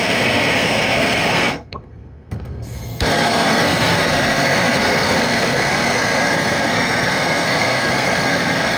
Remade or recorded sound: remade